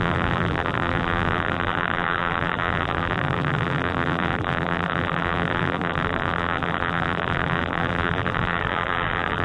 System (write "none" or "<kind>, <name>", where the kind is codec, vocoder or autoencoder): vocoder, BigVGAN v2